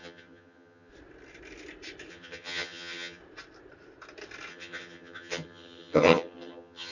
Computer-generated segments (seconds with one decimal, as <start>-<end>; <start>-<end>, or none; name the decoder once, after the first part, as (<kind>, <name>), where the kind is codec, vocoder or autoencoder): 0.0-0.9 (vocoder, HiFi-GAN); 2.1-3.2; 4.5-6.9